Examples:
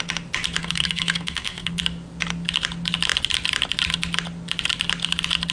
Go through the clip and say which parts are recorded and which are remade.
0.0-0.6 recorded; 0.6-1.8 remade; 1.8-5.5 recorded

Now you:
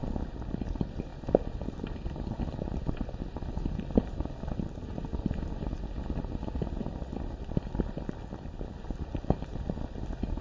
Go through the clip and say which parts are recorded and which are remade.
0.0-10.4 recorded

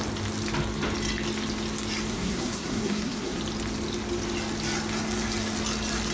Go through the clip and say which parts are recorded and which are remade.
0.0-2.1 recorded; 2.1-3.4 remade; 3.4-6.1 recorded

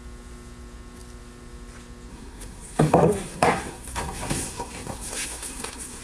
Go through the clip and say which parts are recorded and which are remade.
0.0-2.1 recorded; 2.1-6.0 remade

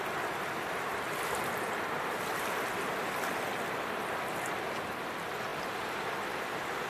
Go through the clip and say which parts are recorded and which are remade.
0.0-6.9 recorded